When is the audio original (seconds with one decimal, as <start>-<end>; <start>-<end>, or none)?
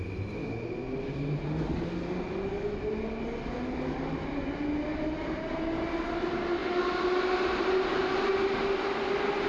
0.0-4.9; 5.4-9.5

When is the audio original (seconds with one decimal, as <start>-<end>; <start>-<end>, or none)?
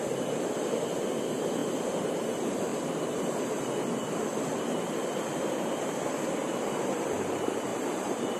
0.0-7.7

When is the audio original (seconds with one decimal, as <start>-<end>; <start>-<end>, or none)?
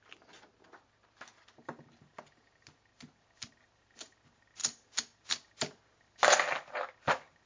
0.0-7.5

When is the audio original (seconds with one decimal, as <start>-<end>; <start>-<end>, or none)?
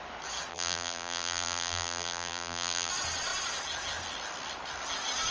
0.0-0.5; 2.9-5.3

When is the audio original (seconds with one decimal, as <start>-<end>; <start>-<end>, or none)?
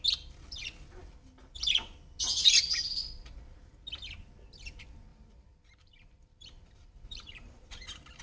0.0-5.1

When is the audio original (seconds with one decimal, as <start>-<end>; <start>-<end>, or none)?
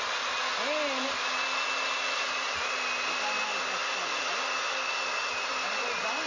0.0-6.3